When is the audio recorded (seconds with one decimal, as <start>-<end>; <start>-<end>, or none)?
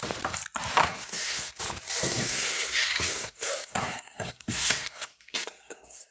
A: 0.0-0.8; 1.6-2.0